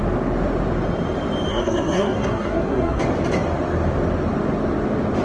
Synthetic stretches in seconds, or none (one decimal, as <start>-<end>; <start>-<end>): 1.5-3.0